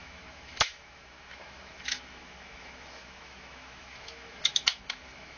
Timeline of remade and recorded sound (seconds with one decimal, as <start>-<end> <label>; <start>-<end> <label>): 0.0-5.4 remade